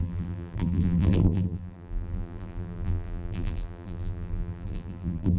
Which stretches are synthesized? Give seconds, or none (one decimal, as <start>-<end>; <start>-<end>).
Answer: 0.0-5.4